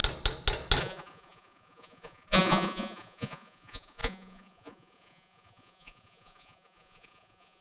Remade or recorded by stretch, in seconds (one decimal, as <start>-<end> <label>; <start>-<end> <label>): 0.0-0.8 recorded; 0.8-7.6 remade